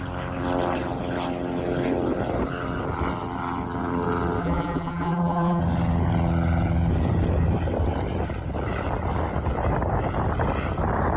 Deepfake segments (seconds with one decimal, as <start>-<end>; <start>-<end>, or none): 4.4-5.6